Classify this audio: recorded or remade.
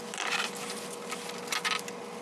recorded